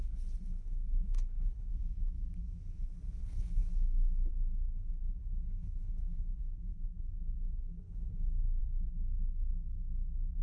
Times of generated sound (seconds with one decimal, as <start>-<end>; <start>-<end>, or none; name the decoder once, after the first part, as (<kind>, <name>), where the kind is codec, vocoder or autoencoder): 0.0-1.7 (codec, HILCodec); 3.2-3.6; 4.3-9.5